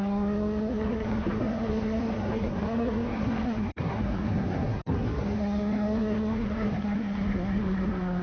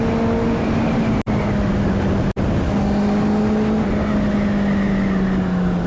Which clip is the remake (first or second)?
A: first